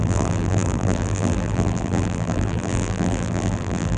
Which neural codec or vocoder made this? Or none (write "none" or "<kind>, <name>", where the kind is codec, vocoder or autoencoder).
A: vocoder, BigVGAN v2